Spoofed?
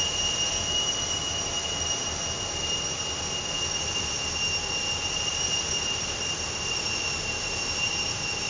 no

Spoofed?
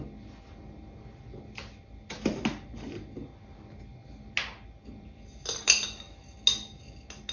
no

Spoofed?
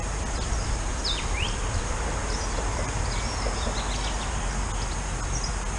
no